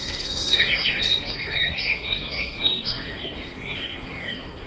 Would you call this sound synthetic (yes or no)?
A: yes